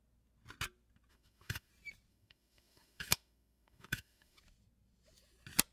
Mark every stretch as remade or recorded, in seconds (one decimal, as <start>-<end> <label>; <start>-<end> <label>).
0.0-1.1 recorded; 1.1-1.7 remade; 1.7-2.1 recorded; 2.1-4.4 remade; 4.4-5.7 recorded